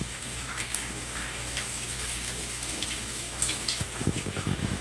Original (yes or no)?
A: no